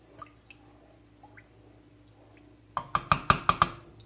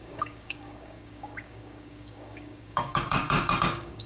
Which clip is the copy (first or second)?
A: second